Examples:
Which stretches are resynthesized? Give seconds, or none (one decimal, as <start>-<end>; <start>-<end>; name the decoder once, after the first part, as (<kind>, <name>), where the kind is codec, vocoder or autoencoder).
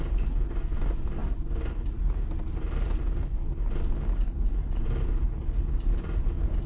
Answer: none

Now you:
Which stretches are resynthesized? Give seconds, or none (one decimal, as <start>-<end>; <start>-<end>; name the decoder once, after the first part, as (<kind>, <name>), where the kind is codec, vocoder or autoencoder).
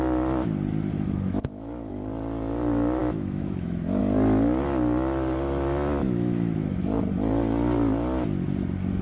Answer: 0.9-1.9 (autoencoder, DAC-VAE); 3.0-4.0; 6.0-6.8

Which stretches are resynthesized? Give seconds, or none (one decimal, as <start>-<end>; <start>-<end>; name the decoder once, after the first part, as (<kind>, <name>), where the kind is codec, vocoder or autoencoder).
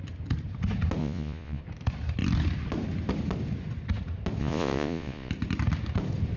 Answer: 1.0-1.6 (vocoder, Vocos); 4.4-5.3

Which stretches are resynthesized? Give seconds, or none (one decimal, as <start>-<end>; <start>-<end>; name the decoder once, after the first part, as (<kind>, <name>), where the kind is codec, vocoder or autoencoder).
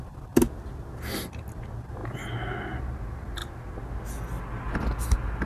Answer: none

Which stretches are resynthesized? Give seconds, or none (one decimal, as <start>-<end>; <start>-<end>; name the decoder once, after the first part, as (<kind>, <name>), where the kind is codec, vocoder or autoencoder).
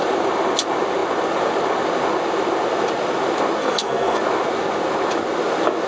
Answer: 3.6-4.2 (codec, SNAC)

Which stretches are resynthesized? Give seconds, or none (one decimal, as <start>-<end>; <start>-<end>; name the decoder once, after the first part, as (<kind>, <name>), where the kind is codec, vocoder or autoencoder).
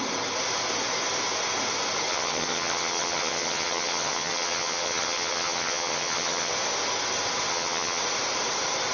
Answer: 2.1-6.5 (vocoder, HiFi-GAN); 7.5-8.0